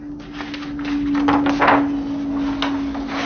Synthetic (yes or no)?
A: no